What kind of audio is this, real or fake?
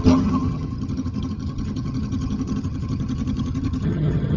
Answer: fake